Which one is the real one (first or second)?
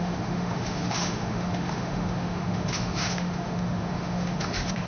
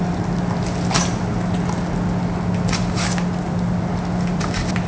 second